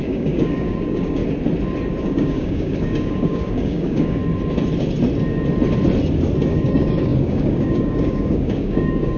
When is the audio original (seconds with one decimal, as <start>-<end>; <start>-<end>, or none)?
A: 1.2-2.0; 4.2-6.5